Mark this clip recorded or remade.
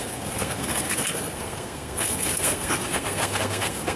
remade